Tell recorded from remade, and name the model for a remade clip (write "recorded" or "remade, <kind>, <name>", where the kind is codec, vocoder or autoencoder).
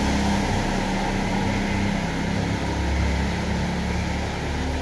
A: recorded